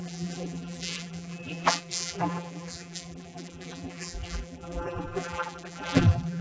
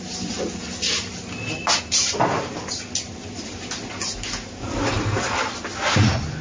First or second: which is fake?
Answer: first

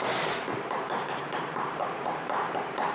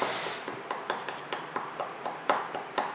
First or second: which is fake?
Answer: first